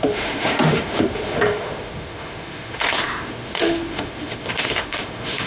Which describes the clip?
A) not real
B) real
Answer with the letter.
A